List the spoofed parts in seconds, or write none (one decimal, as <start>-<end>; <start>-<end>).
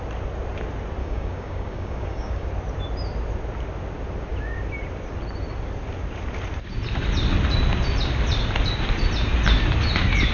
1.0-2.5